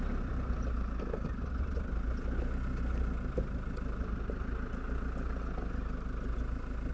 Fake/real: real